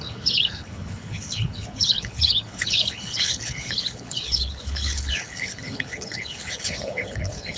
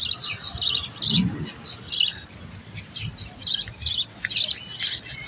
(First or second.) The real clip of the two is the second